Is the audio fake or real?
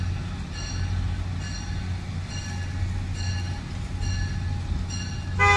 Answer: real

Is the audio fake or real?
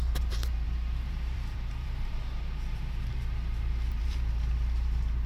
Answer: fake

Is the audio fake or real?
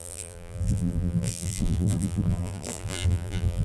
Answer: fake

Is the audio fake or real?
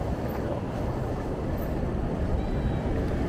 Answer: real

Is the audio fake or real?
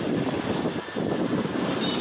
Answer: real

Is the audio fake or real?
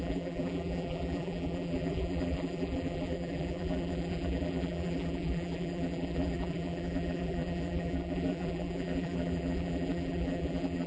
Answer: fake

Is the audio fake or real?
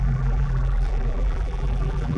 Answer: fake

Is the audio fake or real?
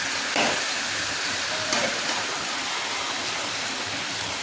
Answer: real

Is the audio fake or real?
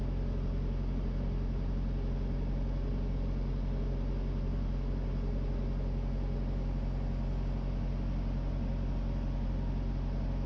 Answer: real